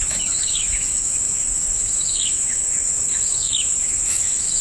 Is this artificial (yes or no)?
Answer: yes